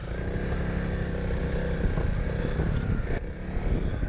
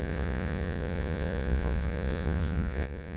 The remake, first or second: second